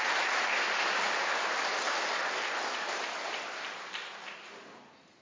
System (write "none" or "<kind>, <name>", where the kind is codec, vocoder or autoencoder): none